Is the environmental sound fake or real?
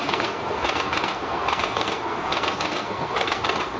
fake